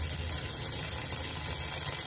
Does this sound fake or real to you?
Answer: real